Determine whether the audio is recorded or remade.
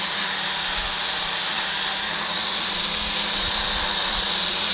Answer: remade